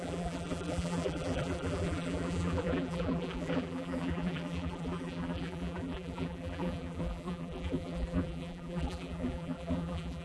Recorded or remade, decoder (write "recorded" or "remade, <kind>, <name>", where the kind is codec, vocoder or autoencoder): remade, vocoder, BigVGAN v2